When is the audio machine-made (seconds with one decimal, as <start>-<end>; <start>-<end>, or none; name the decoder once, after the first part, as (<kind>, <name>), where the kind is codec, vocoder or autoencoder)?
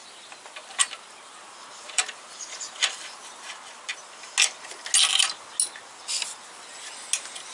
0.0-3.5 (vocoder, BigVGAN v2)